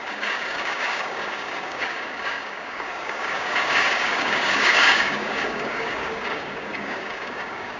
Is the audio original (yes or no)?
no